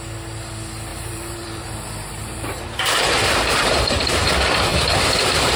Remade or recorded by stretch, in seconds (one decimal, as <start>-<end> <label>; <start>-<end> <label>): 0.0-0.9 recorded; 0.9-4.3 remade; 4.3-4.7 recorded; 4.7-5.6 remade